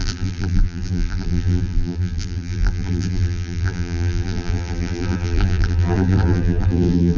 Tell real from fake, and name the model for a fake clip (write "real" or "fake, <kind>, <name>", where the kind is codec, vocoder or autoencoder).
fake, vocoder, BigVGAN v2